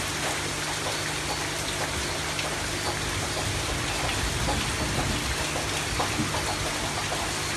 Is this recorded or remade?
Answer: recorded